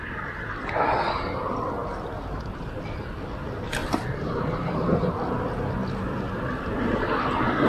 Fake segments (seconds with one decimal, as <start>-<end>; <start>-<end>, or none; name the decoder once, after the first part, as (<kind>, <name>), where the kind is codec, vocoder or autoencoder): 1.8-2.8 (vocoder, BigVGAN v2); 3.8-5.1